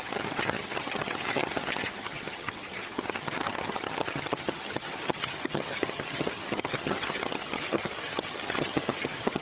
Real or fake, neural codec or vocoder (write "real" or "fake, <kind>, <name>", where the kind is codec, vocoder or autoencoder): fake, vocoder, HiFi-GAN